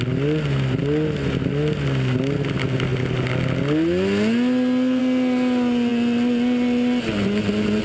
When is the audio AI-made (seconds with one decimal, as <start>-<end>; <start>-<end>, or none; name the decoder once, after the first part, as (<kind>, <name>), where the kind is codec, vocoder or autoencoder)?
none